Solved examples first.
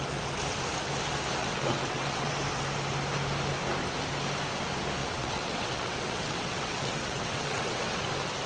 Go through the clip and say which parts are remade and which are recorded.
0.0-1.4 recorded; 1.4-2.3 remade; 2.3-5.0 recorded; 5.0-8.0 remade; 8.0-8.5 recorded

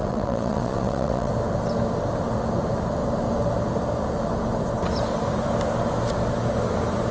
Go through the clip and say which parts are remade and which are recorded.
0.0-1.3 remade; 1.3-7.1 recorded

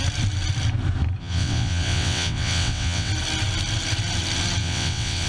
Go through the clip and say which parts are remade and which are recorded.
0.0-1.2 recorded; 1.2-3.1 remade; 3.1-4.6 recorded; 4.6-5.3 remade